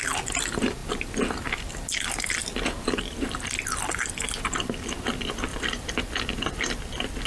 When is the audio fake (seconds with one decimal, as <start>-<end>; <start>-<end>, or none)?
2.4-3.7; 5.5-6.3